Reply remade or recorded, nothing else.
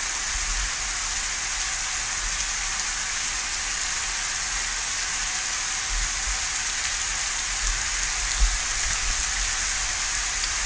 recorded